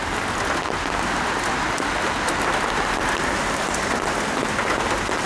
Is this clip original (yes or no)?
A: yes